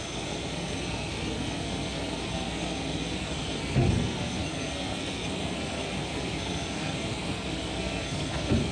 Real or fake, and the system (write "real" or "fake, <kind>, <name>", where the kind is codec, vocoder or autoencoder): fake, codec, SNAC